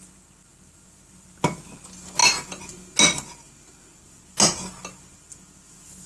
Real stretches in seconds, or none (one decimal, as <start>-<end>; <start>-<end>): 0.0-6.1

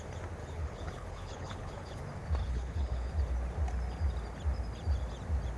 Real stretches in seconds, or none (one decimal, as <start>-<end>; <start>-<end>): 0.0-0.4; 2.0-2.4; 3.1-5.6

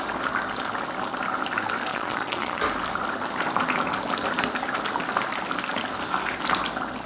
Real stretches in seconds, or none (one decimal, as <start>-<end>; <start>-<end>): 0.0-1.9; 2.6-7.1

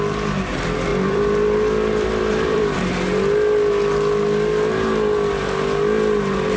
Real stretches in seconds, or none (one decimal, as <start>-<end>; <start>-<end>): 0.0-0.9; 2.8-6.6